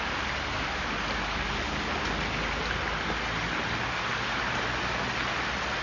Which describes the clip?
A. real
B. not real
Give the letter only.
A